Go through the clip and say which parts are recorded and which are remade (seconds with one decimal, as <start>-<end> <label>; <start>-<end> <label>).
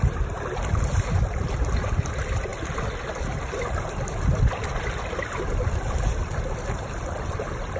0.0-7.8 recorded